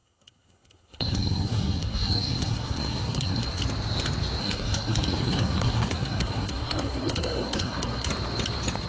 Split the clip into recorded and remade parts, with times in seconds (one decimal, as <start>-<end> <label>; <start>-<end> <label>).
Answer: 0.0-3.6 remade; 3.6-4.4 recorded; 4.4-8.1 remade; 8.1-8.9 recorded